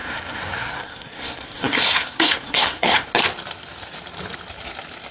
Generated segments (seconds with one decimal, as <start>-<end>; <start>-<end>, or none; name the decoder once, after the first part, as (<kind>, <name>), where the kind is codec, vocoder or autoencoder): 0.0-3.1 (codec, SNAC)